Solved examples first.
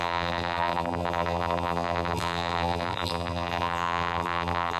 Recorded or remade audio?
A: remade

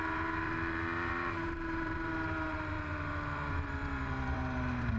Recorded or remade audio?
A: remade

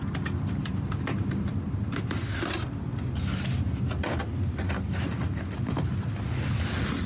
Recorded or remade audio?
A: recorded